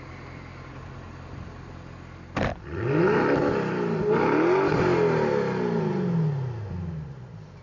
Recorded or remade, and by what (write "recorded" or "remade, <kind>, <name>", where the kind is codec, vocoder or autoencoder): recorded